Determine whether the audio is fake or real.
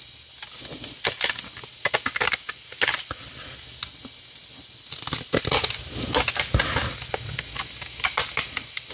real